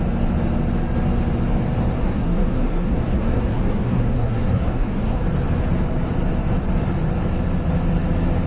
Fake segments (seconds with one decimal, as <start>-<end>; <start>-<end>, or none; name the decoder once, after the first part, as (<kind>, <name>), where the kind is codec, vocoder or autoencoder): 2.0-5.2 (codec, SNAC)